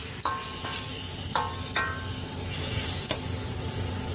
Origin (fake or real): real